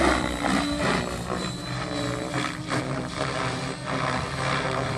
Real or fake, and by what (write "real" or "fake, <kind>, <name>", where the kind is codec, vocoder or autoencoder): real